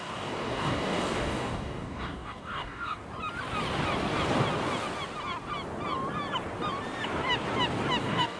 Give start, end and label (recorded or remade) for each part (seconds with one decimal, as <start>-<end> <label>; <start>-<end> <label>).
0.0-3.0 remade; 3.0-8.0 recorded; 8.0-8.4 remade